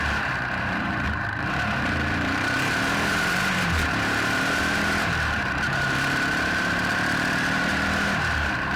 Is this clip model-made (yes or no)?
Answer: yes